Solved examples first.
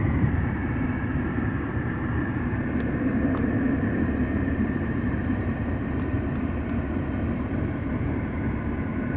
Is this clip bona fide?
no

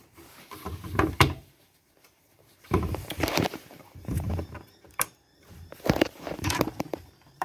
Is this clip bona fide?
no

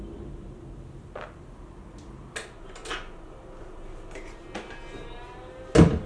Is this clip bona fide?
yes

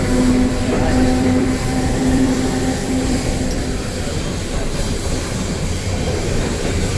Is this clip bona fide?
no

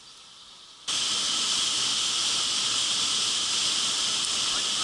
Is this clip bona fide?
yes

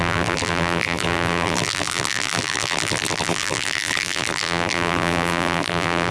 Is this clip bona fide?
no